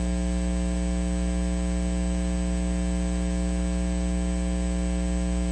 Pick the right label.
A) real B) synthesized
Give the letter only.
A